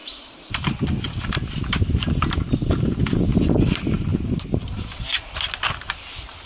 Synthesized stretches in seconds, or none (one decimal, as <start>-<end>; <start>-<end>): 0.0-0.7; 4.1-4.8